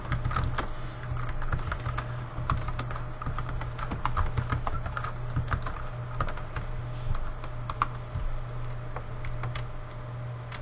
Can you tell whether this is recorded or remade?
recorded